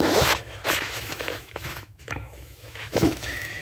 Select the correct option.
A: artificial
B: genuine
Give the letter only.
A